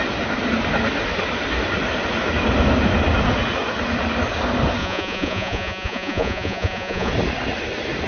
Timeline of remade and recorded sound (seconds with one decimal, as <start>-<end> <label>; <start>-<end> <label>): 0.0-4.8 recorded; 4.8-7.1 remade; 7.1-8.1 recorded